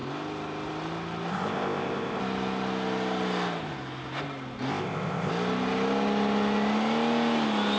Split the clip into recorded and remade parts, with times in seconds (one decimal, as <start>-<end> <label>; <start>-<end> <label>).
0.0-1.3 recorded; 1.3-2.2 remade; 2.2-4.7 recorded; 4.7-5.3 remade; 5.3-7.8 recorded